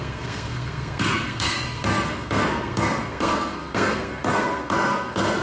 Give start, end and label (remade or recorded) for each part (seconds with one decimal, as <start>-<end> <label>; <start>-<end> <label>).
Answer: 0.0-5.4 remade